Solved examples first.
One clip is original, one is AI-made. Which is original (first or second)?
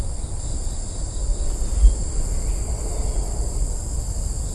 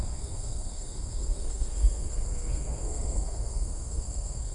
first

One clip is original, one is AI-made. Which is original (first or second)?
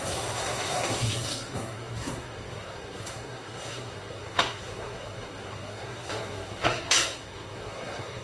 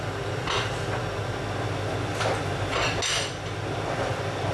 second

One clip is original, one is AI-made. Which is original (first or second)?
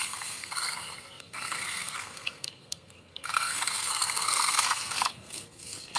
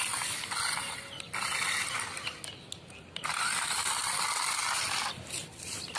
second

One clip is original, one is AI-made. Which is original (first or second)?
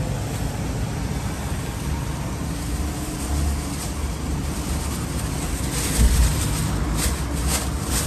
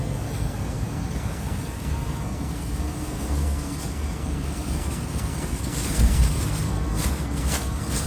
first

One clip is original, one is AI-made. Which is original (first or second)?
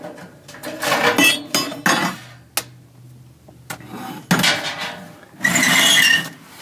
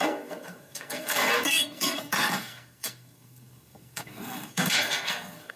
first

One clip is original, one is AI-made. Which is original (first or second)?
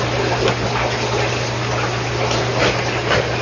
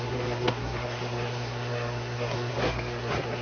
first